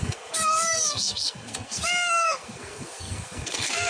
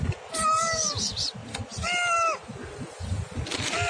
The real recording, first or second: second